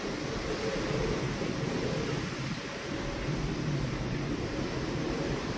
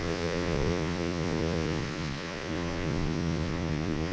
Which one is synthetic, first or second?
second